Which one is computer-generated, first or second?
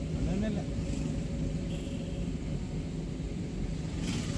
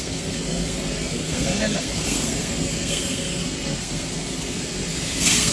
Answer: second